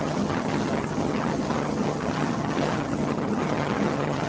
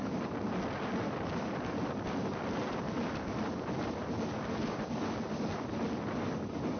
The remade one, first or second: first